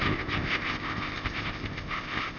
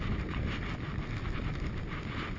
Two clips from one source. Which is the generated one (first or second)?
first